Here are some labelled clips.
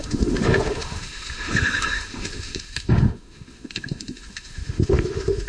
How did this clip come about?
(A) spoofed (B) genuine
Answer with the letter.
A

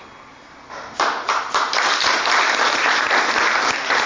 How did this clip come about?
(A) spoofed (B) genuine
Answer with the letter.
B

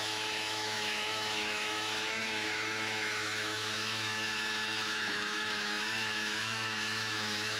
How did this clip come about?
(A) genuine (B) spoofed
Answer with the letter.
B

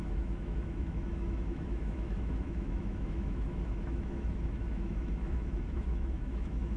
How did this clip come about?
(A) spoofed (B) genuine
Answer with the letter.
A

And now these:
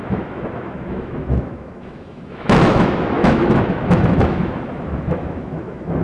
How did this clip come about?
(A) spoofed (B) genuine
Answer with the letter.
A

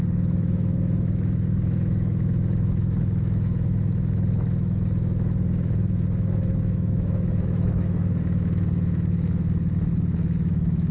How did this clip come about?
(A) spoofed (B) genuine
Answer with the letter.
A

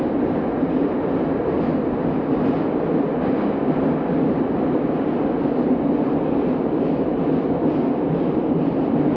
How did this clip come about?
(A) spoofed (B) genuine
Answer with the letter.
B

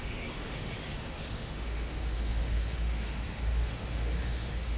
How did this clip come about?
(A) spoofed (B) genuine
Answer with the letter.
A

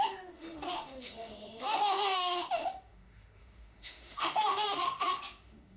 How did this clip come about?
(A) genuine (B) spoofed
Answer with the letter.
B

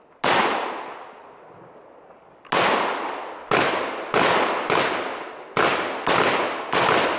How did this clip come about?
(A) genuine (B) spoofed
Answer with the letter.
A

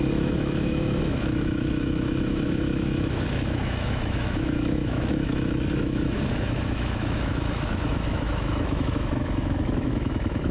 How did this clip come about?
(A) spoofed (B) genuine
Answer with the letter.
A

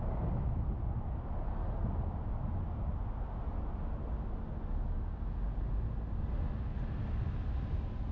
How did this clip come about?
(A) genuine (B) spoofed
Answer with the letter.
A